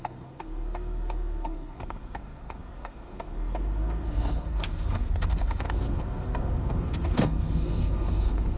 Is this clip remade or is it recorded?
remade